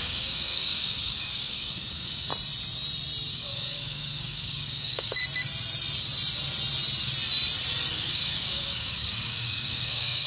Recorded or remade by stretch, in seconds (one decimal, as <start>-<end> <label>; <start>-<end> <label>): 0.0-2.3 remade; 2.3-3.3 recorded; 3.3-5.2 remade; 5.2-7.9 recorded; 7.9-10.3 remade